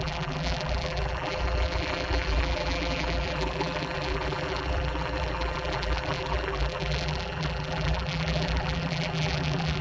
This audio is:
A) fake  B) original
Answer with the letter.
A